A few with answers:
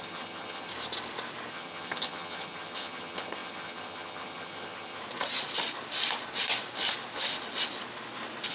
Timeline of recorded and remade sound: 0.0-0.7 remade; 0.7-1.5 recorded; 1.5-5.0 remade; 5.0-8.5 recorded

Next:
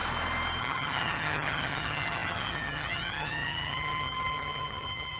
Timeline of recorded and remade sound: 0.0-0.6 recorded; 0.6-5.2 remade

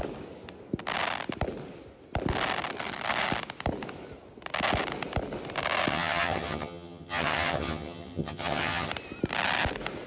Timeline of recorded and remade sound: 0.0-5.9 recorded; 5.9-8.9 remade; 8.9-10.1 recorded

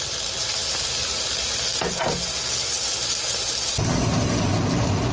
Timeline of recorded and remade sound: 0.0-5.1 recorded

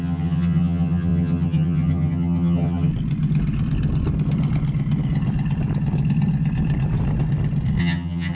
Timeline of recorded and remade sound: 0.0-2.9 remade; 2.9-7.8 recorded; 7.8-8.3 remade

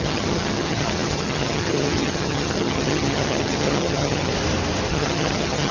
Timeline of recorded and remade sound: 0.0-4.3 remade; 4.3-4.9 recorded; 4.9-5.7 remade

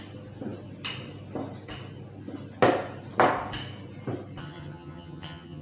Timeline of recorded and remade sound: 0.0-4.4 recorded; 4.4-5.6 remade